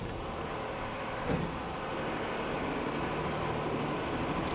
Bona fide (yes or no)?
yes